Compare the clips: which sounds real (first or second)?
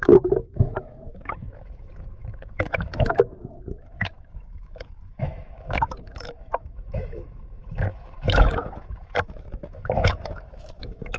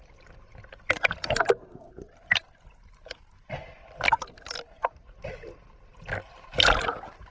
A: second